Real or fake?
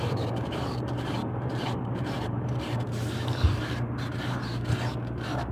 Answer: fake